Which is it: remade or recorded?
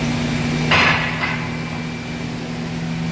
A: recorded